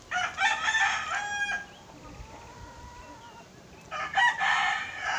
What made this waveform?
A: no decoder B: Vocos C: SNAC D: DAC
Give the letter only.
A